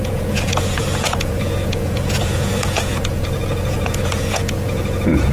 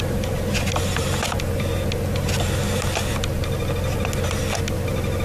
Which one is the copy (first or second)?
first